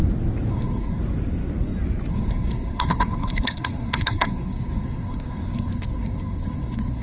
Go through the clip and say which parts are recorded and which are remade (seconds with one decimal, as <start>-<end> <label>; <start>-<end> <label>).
0.0-0.5 recorded; 0.5-1.0 remade; 1.0-2.1 recorded; 2.1-7.0 remade